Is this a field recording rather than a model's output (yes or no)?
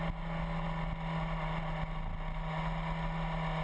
yes